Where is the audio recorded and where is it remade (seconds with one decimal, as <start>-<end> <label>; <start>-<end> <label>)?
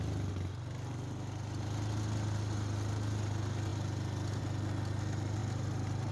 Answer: 0.0-5.4 recorded; 5.4-6.1 remade